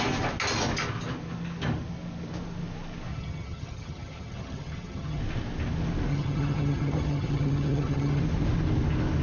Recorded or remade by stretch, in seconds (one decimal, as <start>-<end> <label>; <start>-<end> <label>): 0.0-3.1 recorded; 3.1-5.2 remade; 5.2-6.1 recorded; 6.1-8.2 remade; 8.2-9.2 recorded